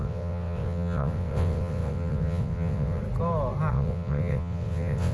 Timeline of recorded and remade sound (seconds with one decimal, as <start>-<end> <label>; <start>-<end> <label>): 0.0-3.0 remade; 3.0-3.7 recorded; 3.7-5.1 remade